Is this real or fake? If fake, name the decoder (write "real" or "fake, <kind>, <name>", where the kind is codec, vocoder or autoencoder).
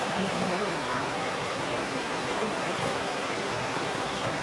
fake, codec, SNAC